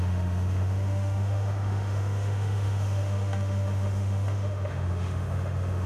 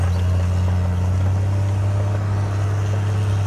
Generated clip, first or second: first